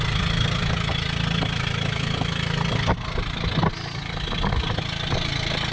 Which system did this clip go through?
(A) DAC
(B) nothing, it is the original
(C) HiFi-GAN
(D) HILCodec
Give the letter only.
B